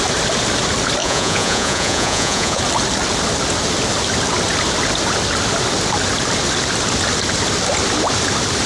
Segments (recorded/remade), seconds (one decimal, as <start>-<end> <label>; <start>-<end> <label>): 0.0-1.0 recorded; 1.0-2.6 remade; 2.6-8.7 recorded